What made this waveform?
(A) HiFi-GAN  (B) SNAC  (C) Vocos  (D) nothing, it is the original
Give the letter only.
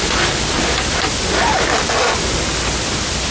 D